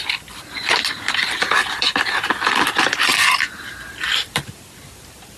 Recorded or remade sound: recorded